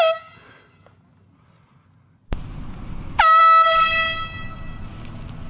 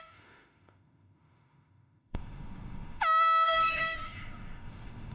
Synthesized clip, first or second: second